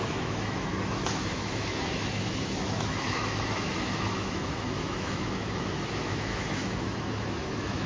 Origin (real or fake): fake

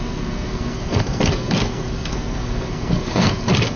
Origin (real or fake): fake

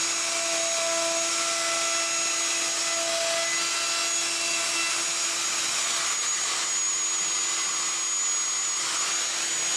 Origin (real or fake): real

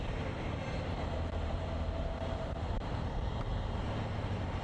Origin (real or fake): fake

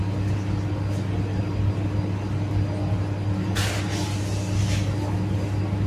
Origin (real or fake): real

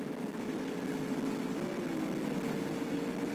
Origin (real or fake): real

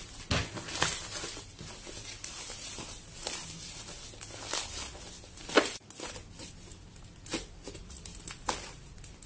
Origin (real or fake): real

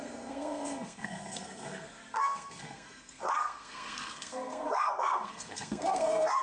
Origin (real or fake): fake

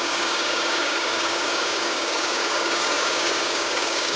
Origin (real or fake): fake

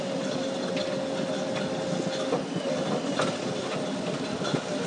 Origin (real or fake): real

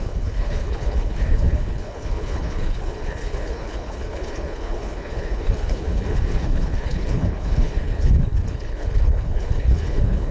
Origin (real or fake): fake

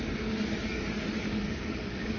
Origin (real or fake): fake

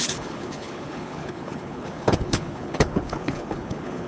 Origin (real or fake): fake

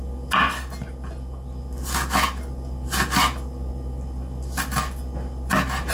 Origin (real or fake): real